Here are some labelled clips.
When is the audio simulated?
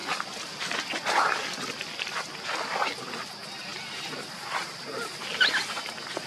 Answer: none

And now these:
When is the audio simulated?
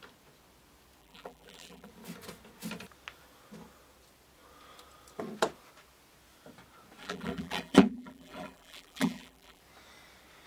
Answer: 1.0-1.9 (vocoder, BigVGAN v2); 7.0-9.6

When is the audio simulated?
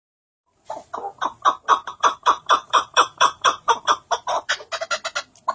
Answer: 1.7-4.5 (vocoder, BigVGAN v2)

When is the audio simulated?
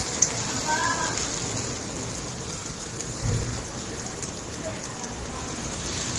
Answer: 2.6-6.2 (vocoder, BigVGAN v2)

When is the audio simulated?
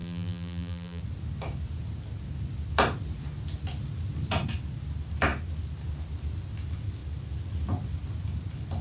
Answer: 0.0-1.0 (vocoder, BigVGAN v2)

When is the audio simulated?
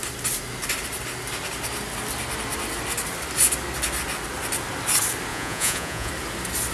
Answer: 5.3-6.1 (vocoder, Vocos)